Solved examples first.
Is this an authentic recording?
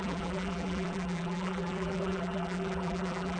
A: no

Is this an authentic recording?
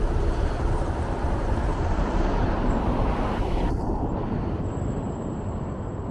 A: no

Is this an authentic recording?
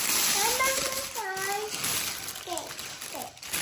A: yes